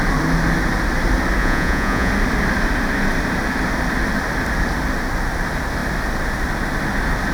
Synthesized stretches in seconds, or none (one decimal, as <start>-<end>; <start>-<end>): 1.4-2.1